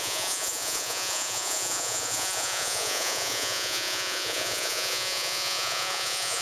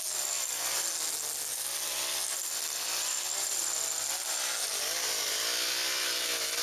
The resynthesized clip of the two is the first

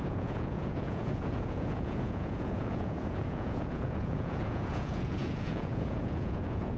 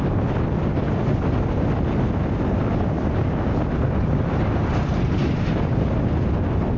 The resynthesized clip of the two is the first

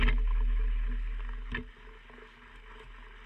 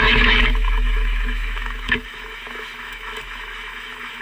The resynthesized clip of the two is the second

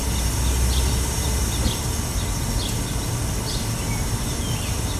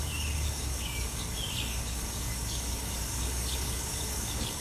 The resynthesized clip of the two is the second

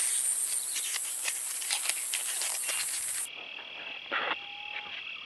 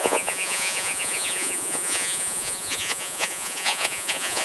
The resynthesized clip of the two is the second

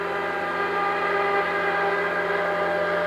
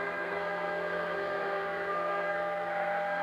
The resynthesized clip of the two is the second